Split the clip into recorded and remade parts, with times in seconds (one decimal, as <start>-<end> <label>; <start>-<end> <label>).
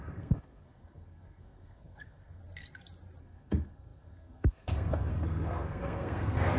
0.0-2.4 remade; 2.4-3.2 recorded; 3.2-6.6 remade